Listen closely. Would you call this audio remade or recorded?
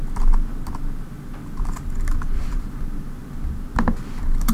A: recorded